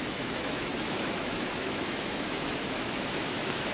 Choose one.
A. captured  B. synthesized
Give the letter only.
B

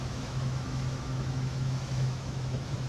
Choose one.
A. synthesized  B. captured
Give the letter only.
A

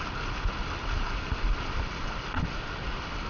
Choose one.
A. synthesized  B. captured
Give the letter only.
B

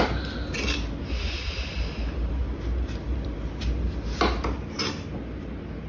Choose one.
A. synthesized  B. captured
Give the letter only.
B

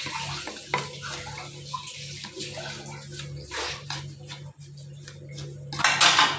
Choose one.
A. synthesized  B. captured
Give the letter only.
B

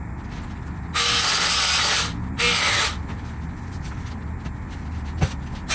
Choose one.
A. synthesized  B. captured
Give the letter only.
B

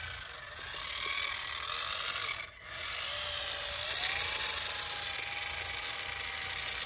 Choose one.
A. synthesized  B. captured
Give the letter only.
B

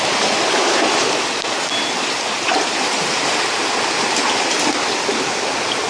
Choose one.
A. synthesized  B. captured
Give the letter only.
B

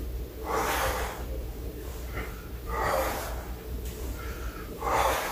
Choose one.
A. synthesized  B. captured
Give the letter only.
B